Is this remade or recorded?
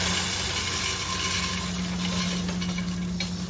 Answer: recorded